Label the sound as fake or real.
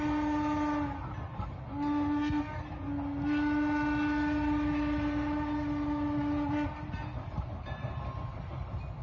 real